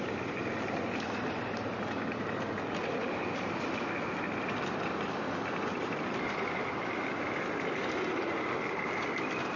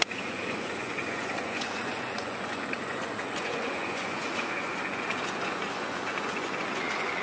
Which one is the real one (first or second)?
first